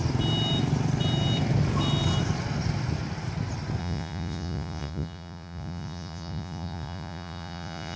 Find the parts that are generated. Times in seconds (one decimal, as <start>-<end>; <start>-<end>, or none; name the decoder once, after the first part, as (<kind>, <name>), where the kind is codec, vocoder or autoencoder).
3.8-8.0 (vocoder, Vocos)